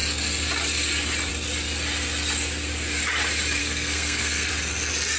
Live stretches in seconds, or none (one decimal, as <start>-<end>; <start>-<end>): 0.0-3.6; 4.5-5.2